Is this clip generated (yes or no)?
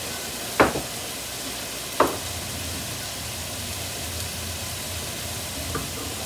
no